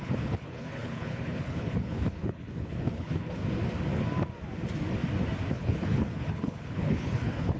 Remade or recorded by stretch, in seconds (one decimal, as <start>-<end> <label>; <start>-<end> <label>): 0.0-3.4 remade; 3.4-5.5 recorded; 5.5-7.6 remade